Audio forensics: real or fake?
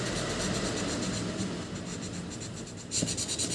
real